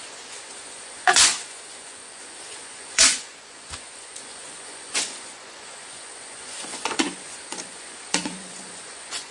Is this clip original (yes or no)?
no